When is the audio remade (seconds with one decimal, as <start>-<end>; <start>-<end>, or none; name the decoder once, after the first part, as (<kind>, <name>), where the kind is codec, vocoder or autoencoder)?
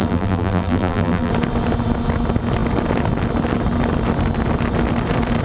0.0-1.3 (vocoder, BigVGAN v2)